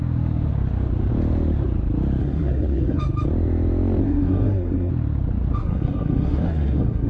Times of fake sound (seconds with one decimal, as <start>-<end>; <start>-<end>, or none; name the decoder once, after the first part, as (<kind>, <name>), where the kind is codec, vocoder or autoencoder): 2.2-3.0 (codec, SNAC); 4.0-4.9; 5.6-7.1